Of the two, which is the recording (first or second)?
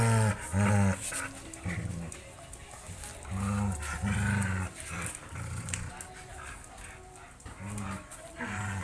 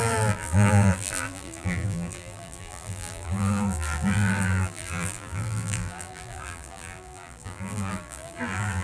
first